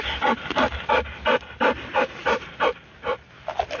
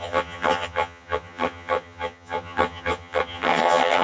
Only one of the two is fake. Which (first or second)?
second